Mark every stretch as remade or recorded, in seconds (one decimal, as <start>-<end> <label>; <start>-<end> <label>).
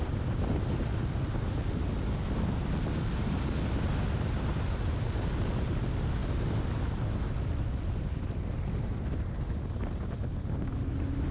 0.0-11.3 recorded